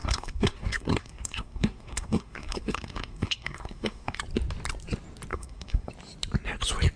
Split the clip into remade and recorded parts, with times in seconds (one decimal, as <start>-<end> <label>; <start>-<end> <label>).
0.0-4.2 remade; 4.2-5.3 recorded; 5.3-5.9 remade; 5.9-7.0 recorded